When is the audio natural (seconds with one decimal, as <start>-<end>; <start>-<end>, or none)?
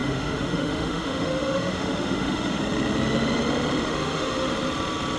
2.6-3.8; 4.5-5.2